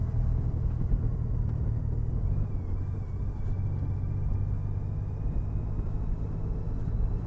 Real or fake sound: real